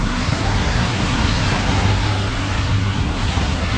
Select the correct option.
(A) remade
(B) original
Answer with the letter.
A